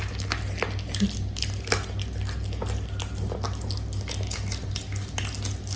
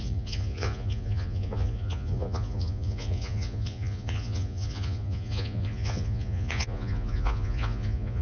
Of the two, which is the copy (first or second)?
second